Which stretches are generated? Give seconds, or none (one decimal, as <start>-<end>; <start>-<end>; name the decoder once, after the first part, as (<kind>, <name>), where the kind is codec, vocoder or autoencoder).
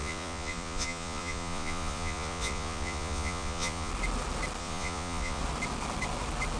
0.0-3.9 (vocoder, Vocos); 4.6-5.4